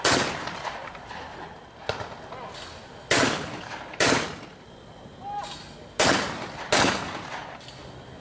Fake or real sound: real